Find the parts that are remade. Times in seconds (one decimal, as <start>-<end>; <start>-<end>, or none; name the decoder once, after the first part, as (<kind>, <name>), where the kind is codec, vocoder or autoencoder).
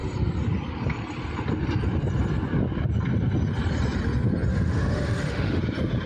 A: 4.5-5.6 (autoencoder, DAC-VAE)